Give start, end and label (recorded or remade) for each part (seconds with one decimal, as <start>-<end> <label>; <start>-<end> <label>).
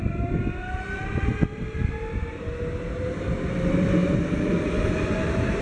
0.0-5.6 recorded